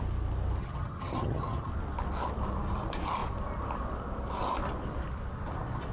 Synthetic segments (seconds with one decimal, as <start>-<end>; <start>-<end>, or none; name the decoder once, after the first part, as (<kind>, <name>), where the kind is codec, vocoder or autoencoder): 0.6-1.7 (vocoder, HiFi-GAN)